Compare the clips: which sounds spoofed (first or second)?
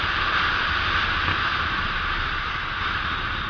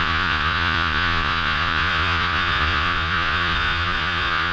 second